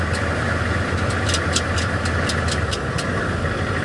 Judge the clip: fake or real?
real